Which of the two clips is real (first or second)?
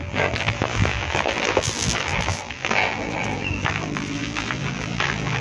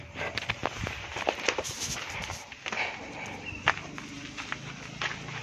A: second